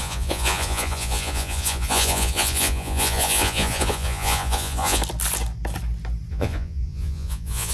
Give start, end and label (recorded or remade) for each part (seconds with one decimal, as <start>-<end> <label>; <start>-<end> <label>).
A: 0.0-5.0 remade; 5.0-6.3 recorded; 6.3-7.7 remade